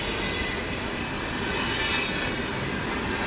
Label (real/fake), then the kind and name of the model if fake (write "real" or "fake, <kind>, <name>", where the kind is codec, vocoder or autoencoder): real